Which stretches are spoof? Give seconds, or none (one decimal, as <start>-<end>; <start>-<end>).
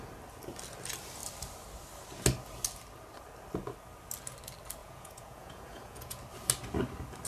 4.8-6.2